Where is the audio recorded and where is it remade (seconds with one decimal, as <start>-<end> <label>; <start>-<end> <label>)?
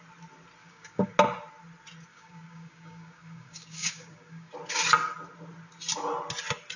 0.0-0.6 recorded; 0.6-1.1 remade; 1.1-2.1 recorded; 2.1-4.5 remade; 4.5-6.8 recorded